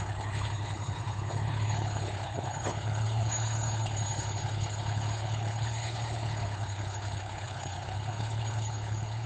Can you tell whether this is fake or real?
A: fake